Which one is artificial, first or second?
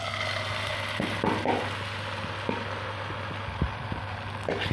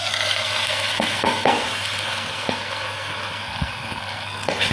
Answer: second